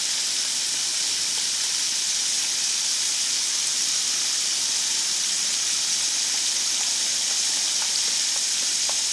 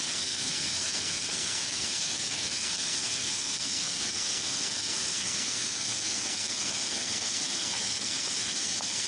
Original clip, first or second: first